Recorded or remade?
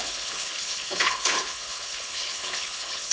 remade